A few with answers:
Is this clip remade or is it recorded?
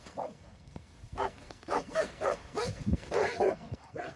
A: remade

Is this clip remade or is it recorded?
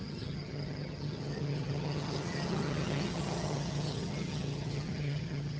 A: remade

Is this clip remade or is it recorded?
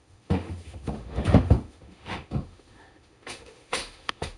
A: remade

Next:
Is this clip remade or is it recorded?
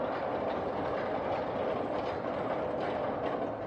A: recorded